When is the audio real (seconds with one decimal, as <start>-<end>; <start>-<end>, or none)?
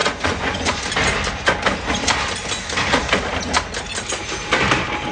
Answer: 0.8-5.1